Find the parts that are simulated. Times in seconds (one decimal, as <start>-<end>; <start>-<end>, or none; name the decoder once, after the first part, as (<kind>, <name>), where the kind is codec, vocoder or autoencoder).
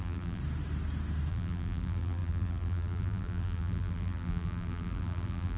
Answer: 0.0-0.4 (vocoder, BigVGAN v2); 1.3-5.6